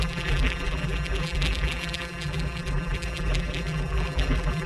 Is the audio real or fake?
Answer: fake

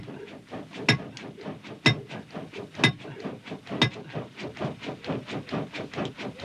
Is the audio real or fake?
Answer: real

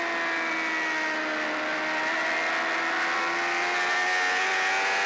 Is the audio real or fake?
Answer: real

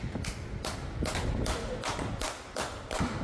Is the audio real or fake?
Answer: real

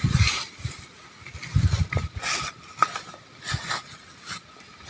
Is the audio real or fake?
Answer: real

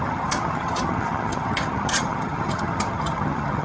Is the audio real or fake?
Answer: fake